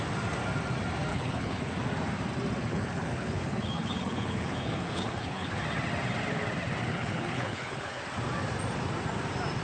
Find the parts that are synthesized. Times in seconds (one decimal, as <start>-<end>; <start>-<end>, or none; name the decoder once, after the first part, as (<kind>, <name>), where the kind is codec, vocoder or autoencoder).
1.1-1.7 (codec, HILCodec); 2.7-5.6; 6.9-8.0